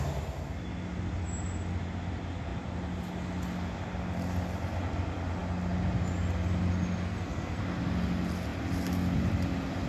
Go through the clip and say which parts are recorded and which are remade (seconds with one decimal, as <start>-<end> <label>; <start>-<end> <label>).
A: 0.0-7.1 recorded; 7.1-7.6 remade; 7.6-9.9 recorded